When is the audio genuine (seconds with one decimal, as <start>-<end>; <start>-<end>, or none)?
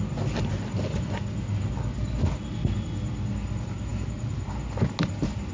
0.0-5.5